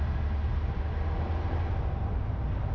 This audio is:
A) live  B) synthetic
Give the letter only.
A